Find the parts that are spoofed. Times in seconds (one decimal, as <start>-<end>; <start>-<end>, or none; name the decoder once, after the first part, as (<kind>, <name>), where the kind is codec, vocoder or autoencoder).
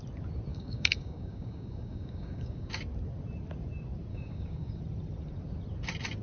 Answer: 0.5-2.7 (codec, DAC); 4.1-4.8